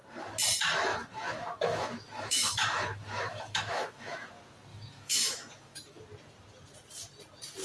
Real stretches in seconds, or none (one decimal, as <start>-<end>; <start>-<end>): 0.0-0.9; 4.3-4.7; 6.0-7.6